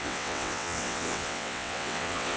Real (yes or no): no